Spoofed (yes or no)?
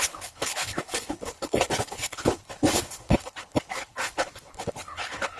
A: yes